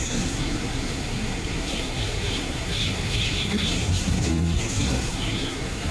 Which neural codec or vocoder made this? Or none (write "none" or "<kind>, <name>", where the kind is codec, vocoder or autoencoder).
codec, SNAC